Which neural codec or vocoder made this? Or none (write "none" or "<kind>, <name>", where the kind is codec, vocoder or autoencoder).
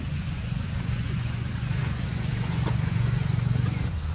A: vocoder, Vocos